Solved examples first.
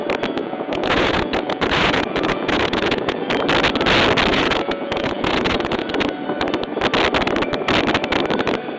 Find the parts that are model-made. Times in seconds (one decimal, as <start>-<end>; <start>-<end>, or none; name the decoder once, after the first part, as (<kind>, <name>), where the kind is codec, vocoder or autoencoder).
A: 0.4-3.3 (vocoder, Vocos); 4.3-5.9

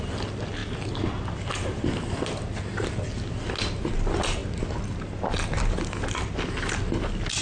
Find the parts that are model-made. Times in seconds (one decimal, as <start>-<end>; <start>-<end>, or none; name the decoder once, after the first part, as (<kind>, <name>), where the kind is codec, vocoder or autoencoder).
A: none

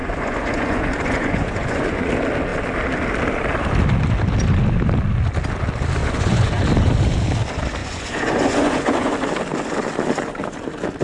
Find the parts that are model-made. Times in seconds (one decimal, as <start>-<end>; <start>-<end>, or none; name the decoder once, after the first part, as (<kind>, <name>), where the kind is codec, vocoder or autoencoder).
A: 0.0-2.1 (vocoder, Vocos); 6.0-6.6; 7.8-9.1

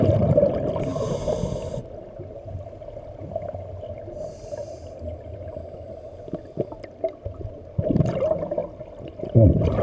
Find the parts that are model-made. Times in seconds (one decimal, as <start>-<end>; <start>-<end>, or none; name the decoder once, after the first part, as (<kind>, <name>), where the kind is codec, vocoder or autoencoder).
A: none

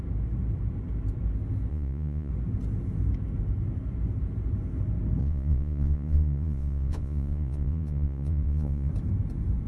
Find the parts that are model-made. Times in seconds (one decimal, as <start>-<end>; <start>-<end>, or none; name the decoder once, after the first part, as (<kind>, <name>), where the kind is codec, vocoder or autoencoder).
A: 1.7-2.3 (vocoder, Vocos); 5.2-8.9